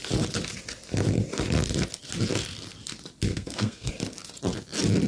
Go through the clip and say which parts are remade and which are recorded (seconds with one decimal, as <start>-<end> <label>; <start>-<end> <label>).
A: 0.0-3.3 recorded; 3.3-3.9 remade; 3.9-5.1 recorded